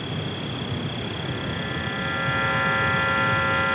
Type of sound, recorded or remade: recorded